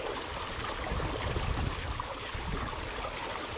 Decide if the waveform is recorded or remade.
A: recorded